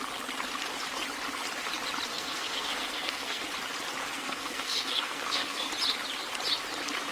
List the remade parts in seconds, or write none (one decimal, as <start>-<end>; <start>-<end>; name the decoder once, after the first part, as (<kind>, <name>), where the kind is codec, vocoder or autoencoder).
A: 2.1-3.4 (codec, SNAC); 4.0-5.7

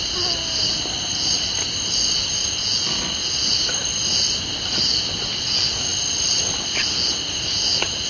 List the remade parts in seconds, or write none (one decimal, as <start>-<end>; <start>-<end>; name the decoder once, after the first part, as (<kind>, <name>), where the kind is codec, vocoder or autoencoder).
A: none

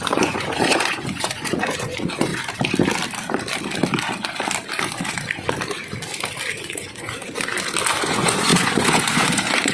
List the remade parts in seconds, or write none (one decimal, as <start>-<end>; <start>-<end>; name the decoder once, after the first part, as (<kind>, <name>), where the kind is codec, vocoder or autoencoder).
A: 0.0-2.3 (vocoder, Vocos); 6.5-7.5; 8.0-9.7

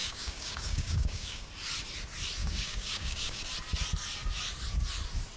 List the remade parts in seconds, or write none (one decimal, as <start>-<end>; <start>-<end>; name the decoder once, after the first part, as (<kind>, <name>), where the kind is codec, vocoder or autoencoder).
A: 0.0-1.5 (codec, DAC); 2.4-3.4

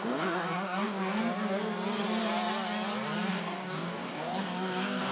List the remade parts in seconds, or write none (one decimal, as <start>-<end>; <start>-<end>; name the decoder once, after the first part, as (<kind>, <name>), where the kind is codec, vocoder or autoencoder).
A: 0.0-1.2 (codec, DAC); 3.3-5.1

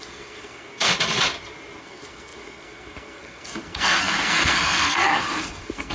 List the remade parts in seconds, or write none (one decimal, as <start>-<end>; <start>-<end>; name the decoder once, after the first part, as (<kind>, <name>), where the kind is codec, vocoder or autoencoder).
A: 0.0-0.9 (codec, SNAC); 1.8-5.9

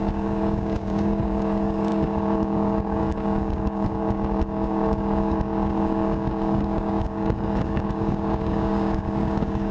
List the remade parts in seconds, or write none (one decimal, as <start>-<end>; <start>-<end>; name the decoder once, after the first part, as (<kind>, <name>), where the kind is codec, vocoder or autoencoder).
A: 0.0-9.7 (codec, DAC)

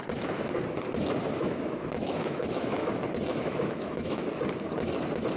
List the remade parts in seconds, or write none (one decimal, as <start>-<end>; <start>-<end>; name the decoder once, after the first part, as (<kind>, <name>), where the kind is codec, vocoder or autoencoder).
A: 1.3-2.9 (autoencoder, DAC-VAE); 3.3-4.2